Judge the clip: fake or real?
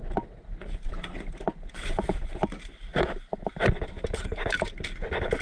real